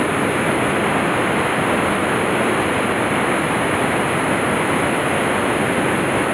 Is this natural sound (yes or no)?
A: yes